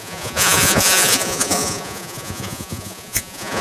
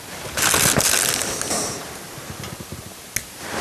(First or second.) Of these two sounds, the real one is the second